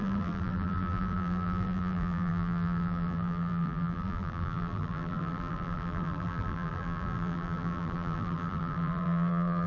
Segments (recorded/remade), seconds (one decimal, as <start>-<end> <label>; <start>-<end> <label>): 0.0-9.7 remade